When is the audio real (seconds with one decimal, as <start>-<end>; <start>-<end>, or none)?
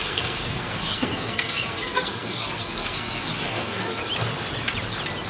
4.0-5.3